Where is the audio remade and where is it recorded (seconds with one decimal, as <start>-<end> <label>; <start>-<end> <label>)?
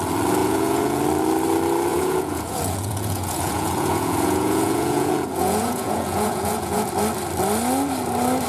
0.0-0.4 recorded; 0.4-1.0 remade; 1.0-1.9 recorded; 1.9-6.9 remade; 6.9-8.5 recorded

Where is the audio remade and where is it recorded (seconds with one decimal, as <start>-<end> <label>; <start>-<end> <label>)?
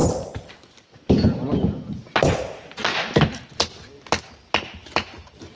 0.0-5.6 recorded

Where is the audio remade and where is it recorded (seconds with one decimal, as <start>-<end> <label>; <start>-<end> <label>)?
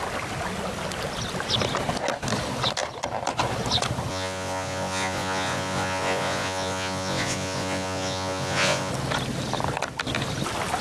0.0-4.1 recorded; 4.1-8.9 remade; 8.9-10.8 recorded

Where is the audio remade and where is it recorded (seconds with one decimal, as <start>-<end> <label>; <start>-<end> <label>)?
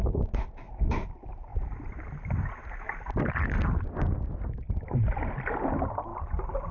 0.0-6.7 recorded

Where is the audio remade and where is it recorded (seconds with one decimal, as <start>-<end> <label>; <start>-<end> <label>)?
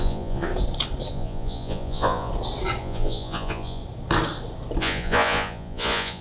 0.0-0.5 remade; 0.5-1.1 recorded; 1.1-2.3 remade; 2.3-2.8 recorded; 2.8-3.8 remade; 3.8-4.8 recorded; 4.8-6.2 remade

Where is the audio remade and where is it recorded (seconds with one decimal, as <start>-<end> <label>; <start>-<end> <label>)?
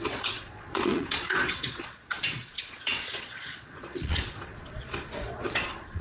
0.0-6.0 remade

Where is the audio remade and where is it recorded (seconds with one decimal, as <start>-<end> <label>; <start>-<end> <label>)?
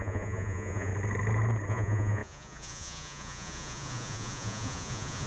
0.0-0.9 remade; 0.9-1.7 recorded; 1.7-5.3 remade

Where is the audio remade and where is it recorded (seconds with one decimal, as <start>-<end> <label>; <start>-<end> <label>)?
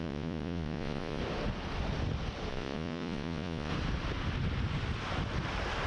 0.0-1.2 remade; 1.2-2.5 recorded; 2.5-3.7 remade; 3.7-5.9 recorded